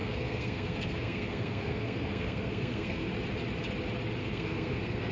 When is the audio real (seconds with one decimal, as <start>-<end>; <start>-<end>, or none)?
3.1-4.2